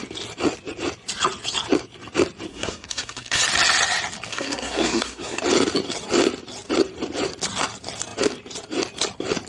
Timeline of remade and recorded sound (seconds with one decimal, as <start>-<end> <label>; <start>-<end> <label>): 0.0-2.5 recorded; 2.5-3.4 remade; 3.4-4.3 recorded; 4.3-5.4 remade; 5.4-9.5 recorded